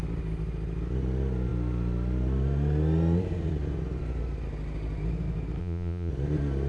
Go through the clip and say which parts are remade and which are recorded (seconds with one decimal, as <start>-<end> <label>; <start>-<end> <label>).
0.0-5.6 recorded; 5.6-6.1 remade; 6.1-6.7 recorded